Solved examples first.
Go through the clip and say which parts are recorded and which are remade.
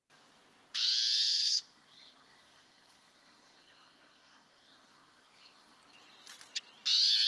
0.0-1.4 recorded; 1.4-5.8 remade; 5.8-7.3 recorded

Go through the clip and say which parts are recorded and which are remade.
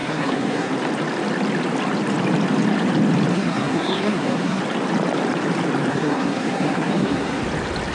0.0-0.7 remade; 0.7-3.3 recorded; 3.3-4.6 remade; 4.6-5.9 recorded; 5.9-7.4 remade; 7.4-7.9 recorded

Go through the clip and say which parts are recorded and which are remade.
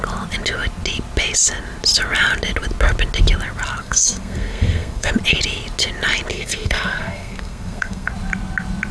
0.0-3.8 recorded; 3.8-5.1 remade; 5.1-6.3 recorded; 6.3-8.1 remade; 8.1-8.9 recorded